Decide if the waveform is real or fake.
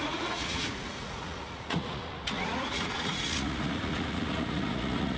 fake